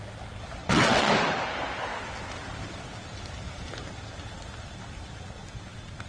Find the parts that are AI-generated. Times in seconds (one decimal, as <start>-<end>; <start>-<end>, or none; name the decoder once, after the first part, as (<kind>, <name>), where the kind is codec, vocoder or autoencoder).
0.6-1.1 (vocoder, WaveNeXt)